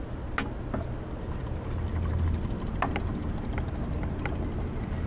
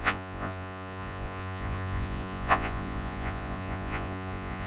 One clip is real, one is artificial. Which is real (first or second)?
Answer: first